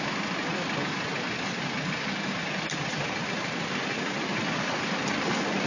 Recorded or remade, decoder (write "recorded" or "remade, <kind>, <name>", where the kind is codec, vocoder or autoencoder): recorded